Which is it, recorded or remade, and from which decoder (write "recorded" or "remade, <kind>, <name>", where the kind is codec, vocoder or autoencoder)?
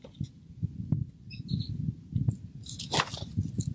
recorded